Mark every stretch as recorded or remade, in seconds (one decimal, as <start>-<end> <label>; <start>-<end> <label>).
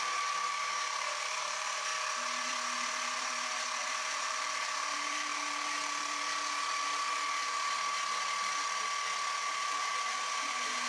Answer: 0.0-1.9 remade; 1.9-3.8 recorded; 3.8-5.3 remade; 5.3-9.4 recorded; 9.4-10.9 remade